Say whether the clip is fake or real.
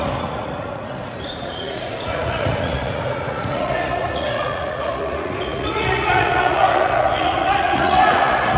fake